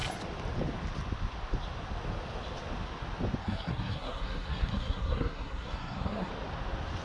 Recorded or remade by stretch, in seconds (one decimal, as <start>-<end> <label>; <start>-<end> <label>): 0.0-3.4 recorded; 3.4-6.3 remade; 6.3-7.0 recorded